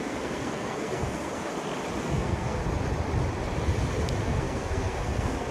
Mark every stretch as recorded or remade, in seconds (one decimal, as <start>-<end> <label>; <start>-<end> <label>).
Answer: 0.0-1.5 remade; 1.5-2.0 recorded; 2.0-2.6 remade; 2.6-4.2 recorded; 4.2-5.5 remade